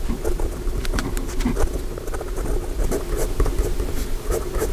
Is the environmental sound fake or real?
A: fake